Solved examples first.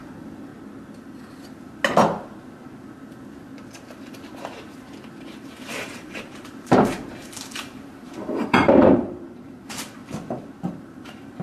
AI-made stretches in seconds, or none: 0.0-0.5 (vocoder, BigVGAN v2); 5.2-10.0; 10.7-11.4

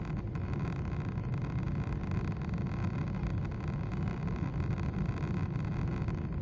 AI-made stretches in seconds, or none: 4.1-5.6 (vocoder, BigVGAN v2)

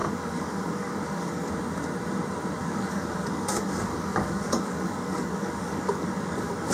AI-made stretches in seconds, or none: 0.0-1.5 (codec, DAC); 2.6-6.7

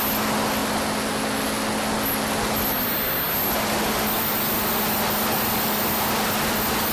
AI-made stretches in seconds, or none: none

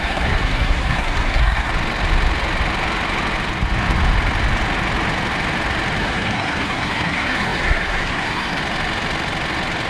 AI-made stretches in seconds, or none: 0.0-1.7 (codec, SNAC); 6.0-8.6

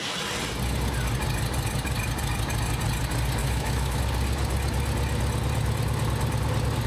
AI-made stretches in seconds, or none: 3.4-4.0 (autoencoder, DAC-VAE)